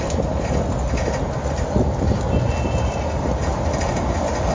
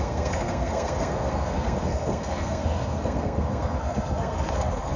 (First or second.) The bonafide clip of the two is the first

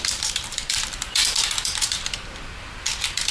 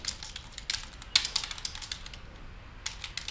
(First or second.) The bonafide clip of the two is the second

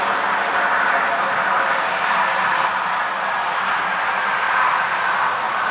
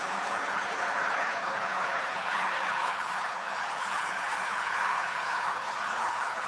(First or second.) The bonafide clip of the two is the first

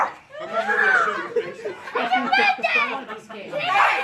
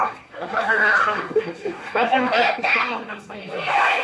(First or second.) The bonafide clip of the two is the first